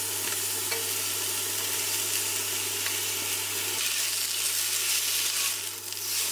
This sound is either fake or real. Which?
real